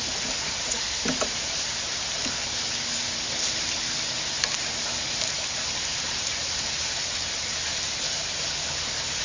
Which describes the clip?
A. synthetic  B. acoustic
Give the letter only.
B